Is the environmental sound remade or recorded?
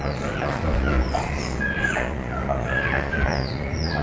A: remade